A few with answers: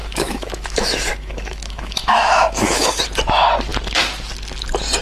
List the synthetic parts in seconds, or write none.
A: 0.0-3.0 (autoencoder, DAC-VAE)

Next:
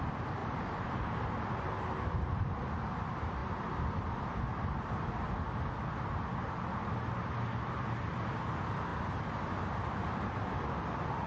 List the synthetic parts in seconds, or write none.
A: 0.4-1.8 (vocoder, BigVGAN v2)